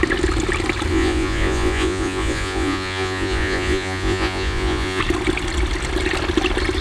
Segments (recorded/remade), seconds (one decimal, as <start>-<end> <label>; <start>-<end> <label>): 0.0-0.9 recorded; 0.9-5.0 remade; 5.0-6.8 recorded